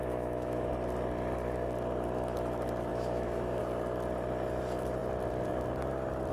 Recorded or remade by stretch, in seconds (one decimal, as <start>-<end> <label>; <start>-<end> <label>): 0.0-0.7 remade; 0.7-2.9 recorded; 2.9-3.6 remade; 3.6-6.3 recorded

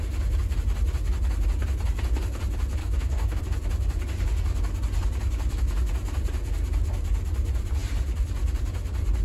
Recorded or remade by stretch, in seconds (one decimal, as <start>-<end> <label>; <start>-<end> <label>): 0.0-2.8 recorded; 2.8-3.4 remade; 3.4-9.2 recorded

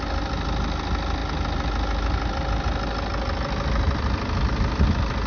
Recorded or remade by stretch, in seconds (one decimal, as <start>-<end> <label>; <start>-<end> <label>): 0.0-5.3 recorded